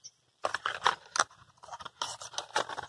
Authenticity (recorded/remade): recorded